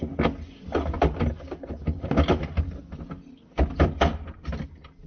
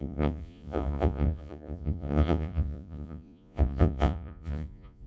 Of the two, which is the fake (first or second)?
second